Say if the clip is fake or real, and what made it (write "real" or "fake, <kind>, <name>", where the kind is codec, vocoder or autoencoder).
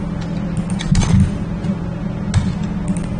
real